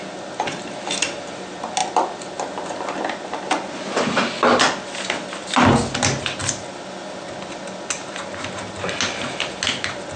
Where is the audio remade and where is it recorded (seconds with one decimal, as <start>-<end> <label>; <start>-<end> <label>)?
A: 0.0-10.2 recorded